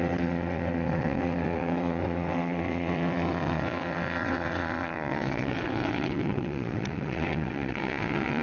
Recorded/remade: remade